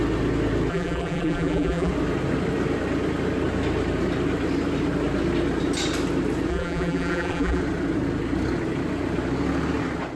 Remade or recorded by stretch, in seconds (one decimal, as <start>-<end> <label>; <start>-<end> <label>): 0.0-0.7 recorded; 0.7-1.9 remade; 1.9-6.5 recorded; 6.5-7.6 remade; 7.6-10.2 recorded